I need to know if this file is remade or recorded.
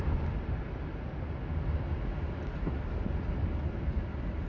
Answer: recorded